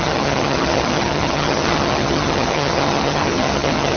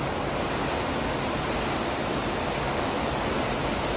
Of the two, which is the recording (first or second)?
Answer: second